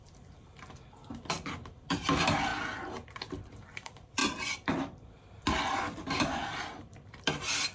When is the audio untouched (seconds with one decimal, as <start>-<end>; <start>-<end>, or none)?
1.0-1.7; 2.5-3.2